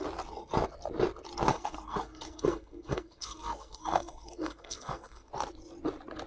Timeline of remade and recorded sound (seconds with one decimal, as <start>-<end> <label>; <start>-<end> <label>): 0.0-1.5 recorded; 1.5-5.3 remade; 5.3-6.3 recorded